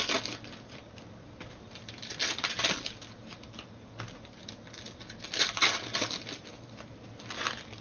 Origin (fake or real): real